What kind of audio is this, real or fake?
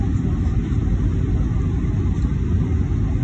real